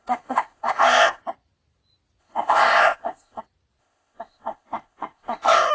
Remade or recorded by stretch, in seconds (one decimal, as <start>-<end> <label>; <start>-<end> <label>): 0.0-1.2 remade; 1.2-2.2 recorded; 2.2-3.4 remade; 3.4-3.8 recorded; 3.8-5.7 remade